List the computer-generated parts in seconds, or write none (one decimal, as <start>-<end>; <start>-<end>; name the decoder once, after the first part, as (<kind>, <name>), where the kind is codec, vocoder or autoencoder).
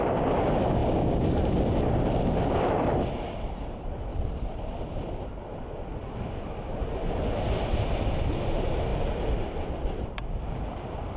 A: none